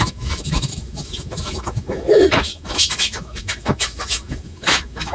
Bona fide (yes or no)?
no